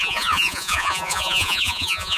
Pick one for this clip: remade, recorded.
remade